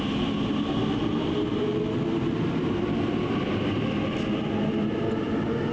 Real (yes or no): yes